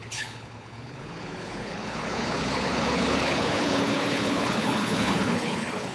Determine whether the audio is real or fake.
fake